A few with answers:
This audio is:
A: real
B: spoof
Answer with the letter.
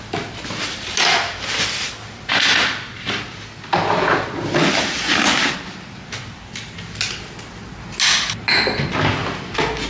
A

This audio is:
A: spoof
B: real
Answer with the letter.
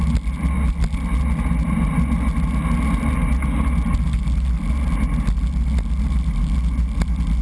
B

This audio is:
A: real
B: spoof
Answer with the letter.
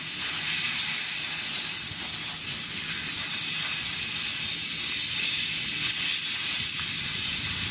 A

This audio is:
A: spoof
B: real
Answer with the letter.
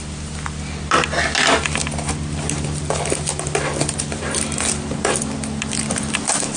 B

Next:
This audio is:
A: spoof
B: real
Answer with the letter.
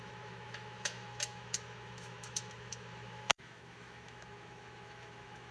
A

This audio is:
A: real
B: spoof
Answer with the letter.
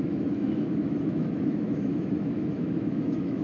B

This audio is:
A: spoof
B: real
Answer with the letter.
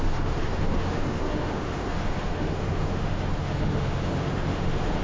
A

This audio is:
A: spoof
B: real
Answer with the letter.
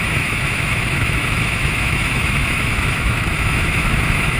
A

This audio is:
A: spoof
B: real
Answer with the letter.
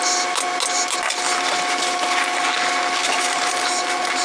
B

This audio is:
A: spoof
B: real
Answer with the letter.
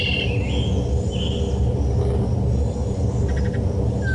B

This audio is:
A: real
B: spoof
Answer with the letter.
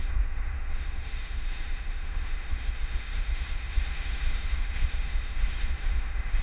B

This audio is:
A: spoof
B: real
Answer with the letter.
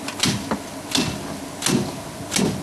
B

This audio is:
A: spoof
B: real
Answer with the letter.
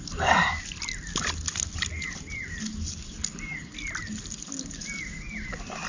B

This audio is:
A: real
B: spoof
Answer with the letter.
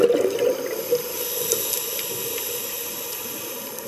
A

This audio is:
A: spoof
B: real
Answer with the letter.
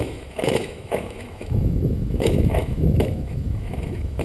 A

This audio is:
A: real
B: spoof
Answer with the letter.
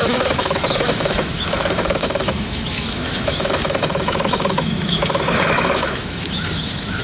B